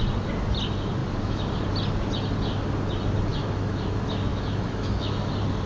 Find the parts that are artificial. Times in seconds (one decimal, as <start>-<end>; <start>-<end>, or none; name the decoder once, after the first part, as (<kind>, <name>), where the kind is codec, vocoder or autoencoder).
1.0-1.5 (autoencoder, DAC-VAE); 3.3-3.9; 4.3-5.3